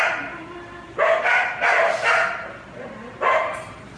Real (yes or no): yes